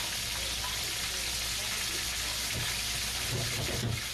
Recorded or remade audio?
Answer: recorded